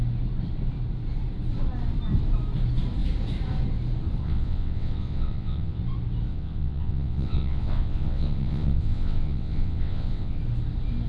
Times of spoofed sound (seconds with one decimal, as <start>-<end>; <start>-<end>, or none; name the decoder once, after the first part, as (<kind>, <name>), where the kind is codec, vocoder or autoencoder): 4.2-5.8 (vocoder, WaveNeXt); 6.3-10.4